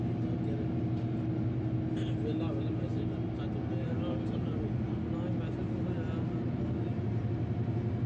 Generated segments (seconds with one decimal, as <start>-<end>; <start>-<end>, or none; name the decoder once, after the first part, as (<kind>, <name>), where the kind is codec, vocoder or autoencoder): none